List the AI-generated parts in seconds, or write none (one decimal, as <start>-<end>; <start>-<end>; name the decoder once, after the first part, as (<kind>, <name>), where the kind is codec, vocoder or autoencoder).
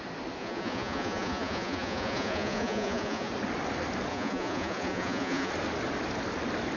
0.4-3.3 (vocoder, Vocos); 4.1-5.5